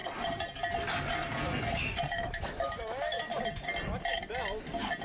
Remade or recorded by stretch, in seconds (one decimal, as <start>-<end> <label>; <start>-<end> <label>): 0.0-2.1 recorded; 2.1-3.3 remade; 3.3-5.0 recorded